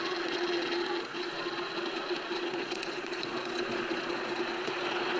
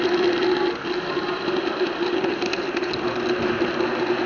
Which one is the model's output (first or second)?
first